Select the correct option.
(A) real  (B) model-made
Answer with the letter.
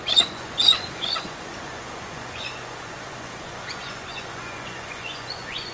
B